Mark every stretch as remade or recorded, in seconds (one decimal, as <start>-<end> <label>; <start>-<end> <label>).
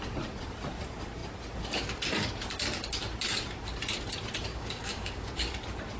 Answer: 0.0-4.5 recorded; 4.5-5.3 remade; 5.3-6.0 recorded